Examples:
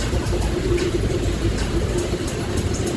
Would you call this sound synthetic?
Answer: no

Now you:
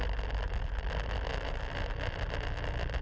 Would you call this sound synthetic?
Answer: no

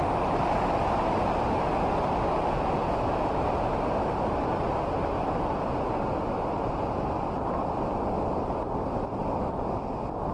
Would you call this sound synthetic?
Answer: no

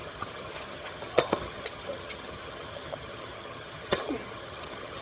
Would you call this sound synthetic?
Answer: yes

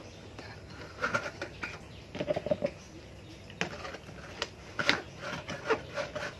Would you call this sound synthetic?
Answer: no